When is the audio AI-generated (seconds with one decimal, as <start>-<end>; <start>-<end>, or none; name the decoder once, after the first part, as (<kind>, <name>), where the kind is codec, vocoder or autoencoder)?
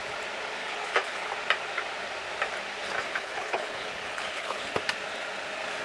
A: 0.6-1.3 (codec, HILCodec); 3.1-4.6